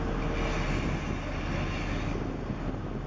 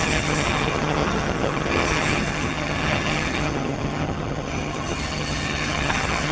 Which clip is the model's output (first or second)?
second